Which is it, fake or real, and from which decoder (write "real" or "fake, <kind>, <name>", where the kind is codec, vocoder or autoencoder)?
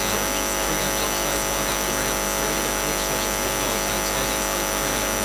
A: real